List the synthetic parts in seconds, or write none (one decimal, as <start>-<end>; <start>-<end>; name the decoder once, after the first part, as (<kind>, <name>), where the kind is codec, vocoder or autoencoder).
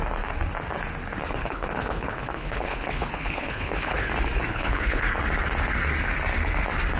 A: 1.4-4.1 (codec, HILCodec); 4.5-5.0